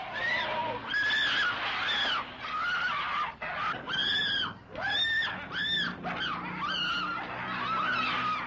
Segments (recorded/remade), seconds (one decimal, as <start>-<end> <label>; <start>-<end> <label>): 0.0-8.5 recorded

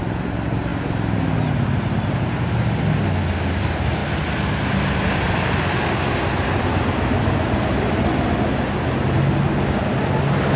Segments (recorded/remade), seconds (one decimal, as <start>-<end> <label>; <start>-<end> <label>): 0.0-10.6 recorded

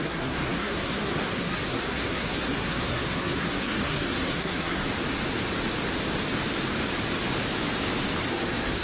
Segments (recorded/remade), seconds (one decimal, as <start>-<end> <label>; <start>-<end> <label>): 0.0-4.8 remade; 4.8-8.3 recorded; 8.3-8.8 remade

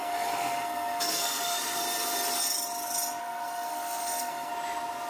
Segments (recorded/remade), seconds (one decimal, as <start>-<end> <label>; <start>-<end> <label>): 0.0-1.8 remade; 1.8-3.2 recorded; 3.2-4.5 remade; 4.5-5.1 recorded